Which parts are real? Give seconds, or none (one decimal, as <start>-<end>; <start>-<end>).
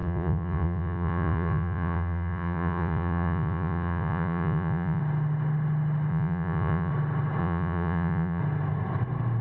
5.0-6.1; 6.9-7.4; 8.4-9.4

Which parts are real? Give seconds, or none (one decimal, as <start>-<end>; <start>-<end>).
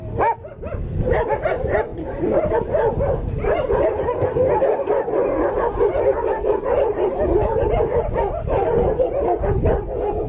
0.0-10.3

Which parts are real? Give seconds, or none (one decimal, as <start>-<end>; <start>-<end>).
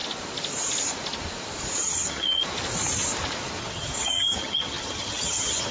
0.0-1.8; 2.4-3.6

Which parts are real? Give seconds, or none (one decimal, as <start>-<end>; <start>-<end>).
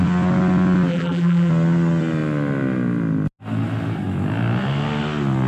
0.0-0.9; 1.5-5.5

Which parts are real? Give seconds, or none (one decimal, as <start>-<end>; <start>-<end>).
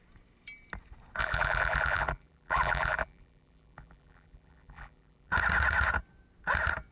0.0-1.2; 5.3-6.9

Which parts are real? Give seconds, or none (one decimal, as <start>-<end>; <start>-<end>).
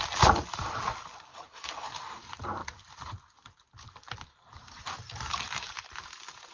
0.0-1.3; 1.9-6.5